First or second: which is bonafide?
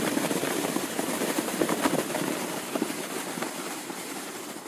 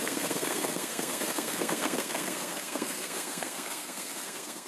first